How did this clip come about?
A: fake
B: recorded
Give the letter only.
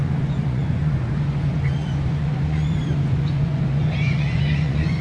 A